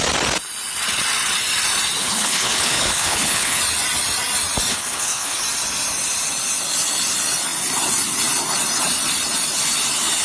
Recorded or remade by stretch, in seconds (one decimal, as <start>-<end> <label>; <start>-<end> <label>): 0.0-2.0 recorded; 2.0-3.6 remade; 3.6-4.7 recorded; 4.7-5.4 remade; 5.4-10.2 recorded